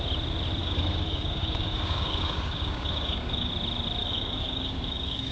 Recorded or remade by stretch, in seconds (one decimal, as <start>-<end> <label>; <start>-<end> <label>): 0.0-0.6 recorded; 0.6-3.5 remade; 3.5-4.0 recorded; 4.0-5.3 remade